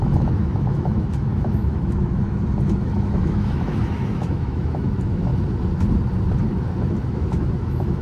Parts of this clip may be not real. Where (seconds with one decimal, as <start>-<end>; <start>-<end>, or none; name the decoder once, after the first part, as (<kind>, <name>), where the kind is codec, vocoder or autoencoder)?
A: 0.0-5.3 (autoencoder, DAC-VAE); 7.1-8.0